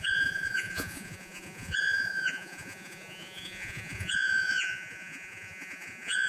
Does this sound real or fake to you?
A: fake